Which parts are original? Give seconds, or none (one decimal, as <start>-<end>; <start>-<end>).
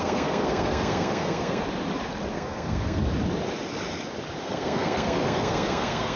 1.6-2.3; 3.0-4.4